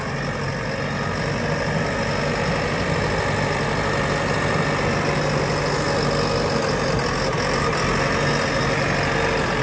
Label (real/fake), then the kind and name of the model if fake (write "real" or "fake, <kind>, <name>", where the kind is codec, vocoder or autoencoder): real